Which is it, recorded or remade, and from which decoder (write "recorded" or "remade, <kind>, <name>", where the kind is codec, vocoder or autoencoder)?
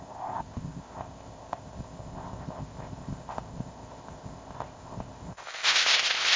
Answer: remade, codec, ZipCodec